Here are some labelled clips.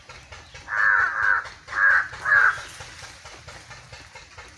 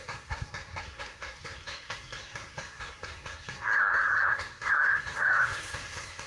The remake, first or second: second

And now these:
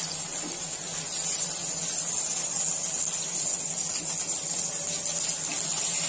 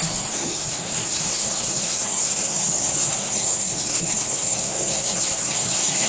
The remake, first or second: second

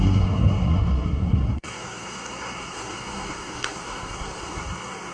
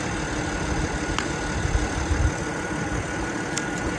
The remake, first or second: first